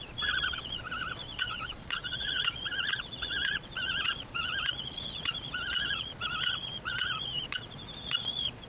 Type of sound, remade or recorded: remade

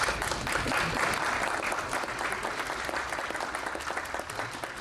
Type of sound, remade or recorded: recorded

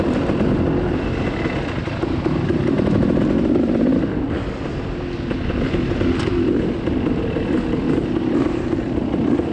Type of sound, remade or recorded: remade